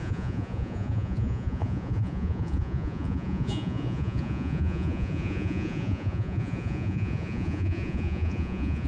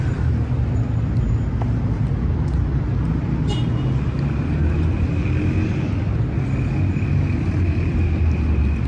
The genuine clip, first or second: second